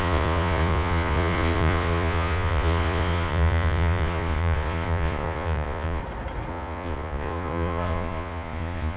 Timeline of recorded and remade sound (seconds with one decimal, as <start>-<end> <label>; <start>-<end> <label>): 0.0-6.0 remade; 6.0-6.5 recorded; 6.5-9.0 remade